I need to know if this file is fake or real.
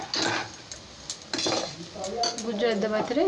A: real